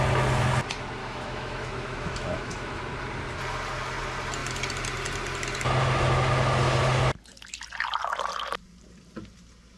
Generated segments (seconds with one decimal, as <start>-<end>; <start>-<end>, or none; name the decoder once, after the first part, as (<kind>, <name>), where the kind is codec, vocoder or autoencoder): 1.0-2.8 (autoencoder, DAC-VAE)